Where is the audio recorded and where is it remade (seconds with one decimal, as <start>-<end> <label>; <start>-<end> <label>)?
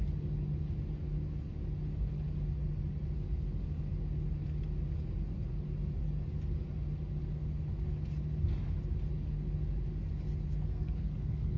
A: 0.0-10.7 recorded; 10.7-11.6 remade